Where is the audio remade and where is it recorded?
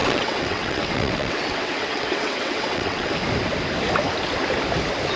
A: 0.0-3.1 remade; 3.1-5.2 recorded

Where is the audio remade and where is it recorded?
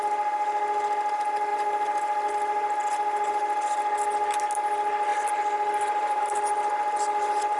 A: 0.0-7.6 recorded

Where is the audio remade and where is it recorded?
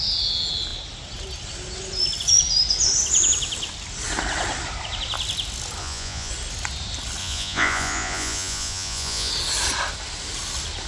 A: 0.0-5.8 recorded; 5.8-6.3 remade; 6.3-7.2 recorded; 7.2-9.3 remade; 9.3-10.9 recorded